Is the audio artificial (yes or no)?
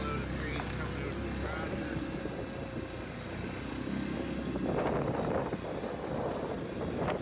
no